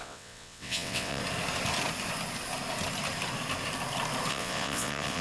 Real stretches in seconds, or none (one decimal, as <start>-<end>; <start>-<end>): 1.2-4.3